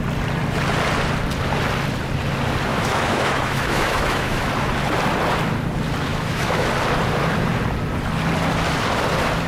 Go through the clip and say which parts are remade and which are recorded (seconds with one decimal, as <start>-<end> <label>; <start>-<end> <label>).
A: 0.0-2.7 recorded; 2.7-4.5 remade; 4.5-6.1 recorded; 6.1-6.7 remade; 6.7-9.5 recorded